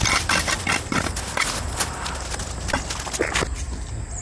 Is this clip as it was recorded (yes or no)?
yes